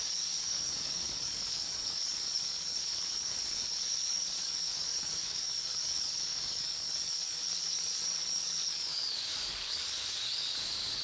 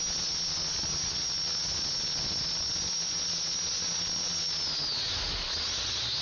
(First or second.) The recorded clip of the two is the second